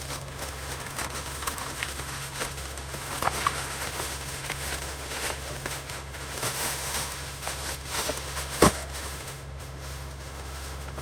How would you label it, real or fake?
fake